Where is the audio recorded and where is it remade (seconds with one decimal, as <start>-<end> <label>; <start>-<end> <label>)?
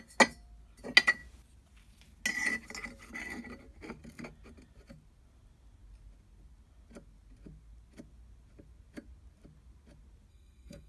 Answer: 0.0-10.3 recorded; 10.3-10.9 remade